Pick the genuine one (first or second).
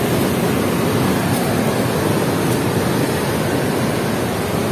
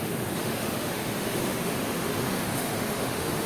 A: first